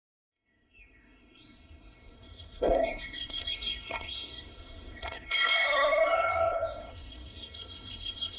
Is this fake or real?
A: fake